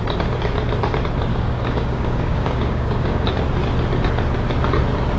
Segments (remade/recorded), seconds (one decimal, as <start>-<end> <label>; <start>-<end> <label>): 0.0-1.3 recorded; 1.3-3.3 remade; 3.3-5.2 recorded